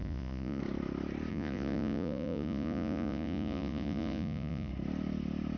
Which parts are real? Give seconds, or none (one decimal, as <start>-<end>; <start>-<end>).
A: 0.6-1.3; 4.7-5.6